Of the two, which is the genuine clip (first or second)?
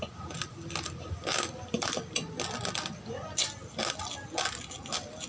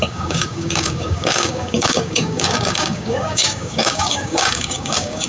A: first